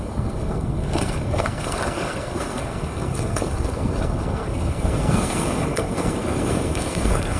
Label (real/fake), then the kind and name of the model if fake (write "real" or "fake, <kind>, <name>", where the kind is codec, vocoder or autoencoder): fake, codec, SNAC